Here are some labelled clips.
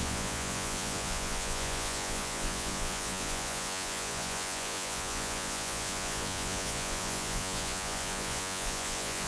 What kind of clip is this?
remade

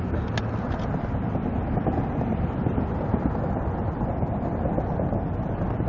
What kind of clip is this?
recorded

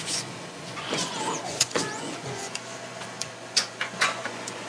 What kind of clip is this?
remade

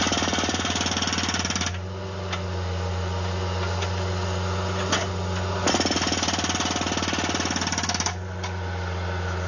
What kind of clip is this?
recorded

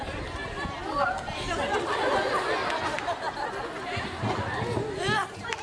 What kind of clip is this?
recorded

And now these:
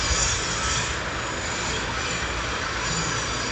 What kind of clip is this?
recorded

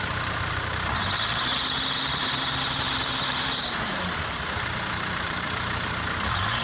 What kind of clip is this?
remade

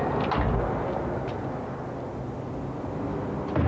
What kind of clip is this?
recorded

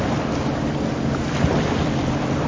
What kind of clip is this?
recorded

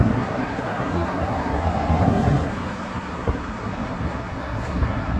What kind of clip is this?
remade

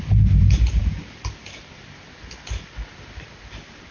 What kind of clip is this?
recorded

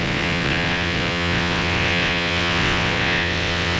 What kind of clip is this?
remade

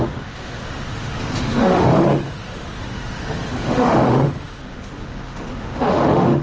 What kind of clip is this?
remade